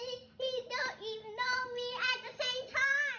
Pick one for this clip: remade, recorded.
remade